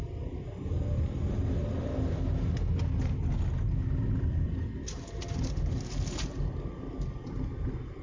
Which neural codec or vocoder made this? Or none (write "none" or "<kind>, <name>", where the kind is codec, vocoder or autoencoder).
none